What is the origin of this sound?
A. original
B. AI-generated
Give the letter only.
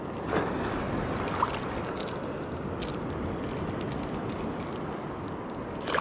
A